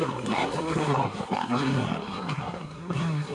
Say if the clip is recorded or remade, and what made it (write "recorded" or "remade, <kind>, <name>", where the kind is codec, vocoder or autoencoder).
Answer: remade, codec, SNAC